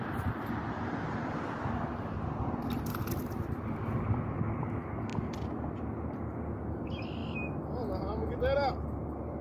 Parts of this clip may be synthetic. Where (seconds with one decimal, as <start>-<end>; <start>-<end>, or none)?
none